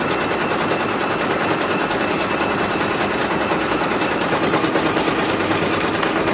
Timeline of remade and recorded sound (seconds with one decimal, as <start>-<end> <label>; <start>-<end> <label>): 0.0-6.3 recorded